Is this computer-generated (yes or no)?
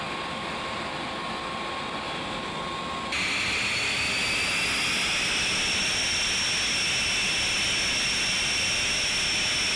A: no